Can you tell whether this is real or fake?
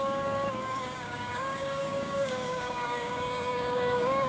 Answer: fake